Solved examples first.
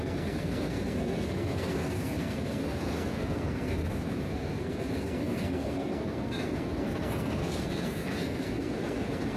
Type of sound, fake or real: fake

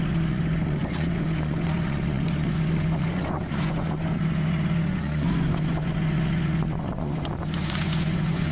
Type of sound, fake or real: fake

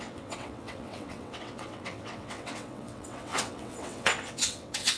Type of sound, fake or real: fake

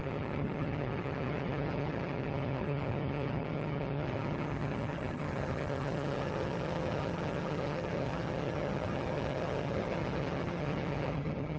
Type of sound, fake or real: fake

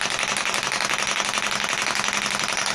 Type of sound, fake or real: real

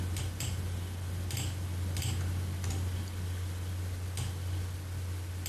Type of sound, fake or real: real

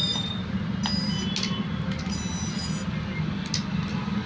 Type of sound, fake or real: real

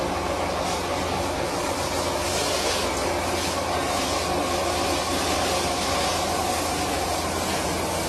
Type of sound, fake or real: real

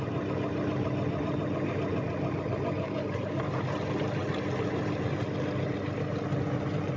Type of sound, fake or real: real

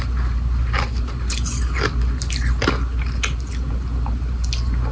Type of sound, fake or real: real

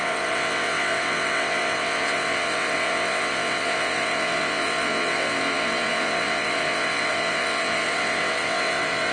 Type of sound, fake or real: fake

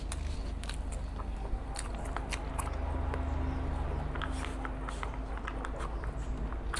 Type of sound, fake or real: real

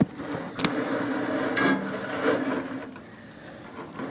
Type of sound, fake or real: real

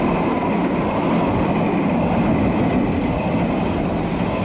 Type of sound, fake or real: real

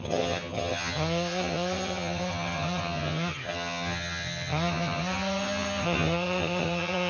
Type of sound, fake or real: fake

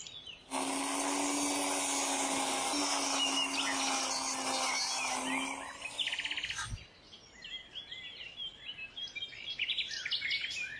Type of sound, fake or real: real